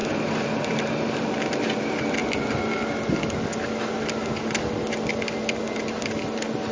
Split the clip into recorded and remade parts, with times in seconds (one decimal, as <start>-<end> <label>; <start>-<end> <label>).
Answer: 0.0-6.7 recorded